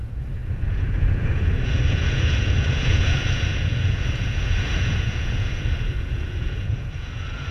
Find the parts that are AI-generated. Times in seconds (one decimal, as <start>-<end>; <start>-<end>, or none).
0.0-7.5